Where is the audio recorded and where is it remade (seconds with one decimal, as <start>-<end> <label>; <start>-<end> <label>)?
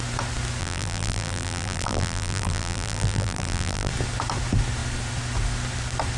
0.0-0.6 recorded; 0.6-3.9 remade; 3.9-6.2 recorded